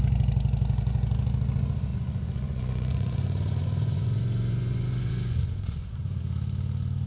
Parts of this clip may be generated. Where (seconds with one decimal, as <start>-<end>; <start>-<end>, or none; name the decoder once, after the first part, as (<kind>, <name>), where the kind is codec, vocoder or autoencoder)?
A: 1.9-6.2 (vocoder, Vocos)